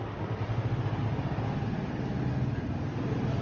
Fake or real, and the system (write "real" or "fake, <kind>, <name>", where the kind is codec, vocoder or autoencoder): real